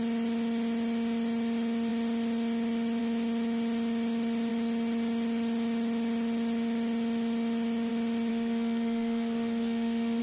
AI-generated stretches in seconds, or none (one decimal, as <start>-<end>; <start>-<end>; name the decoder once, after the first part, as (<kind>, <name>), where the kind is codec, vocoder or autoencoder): 8.3-10.2 (codec, SNAC)